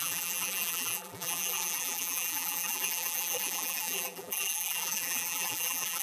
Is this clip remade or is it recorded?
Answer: remade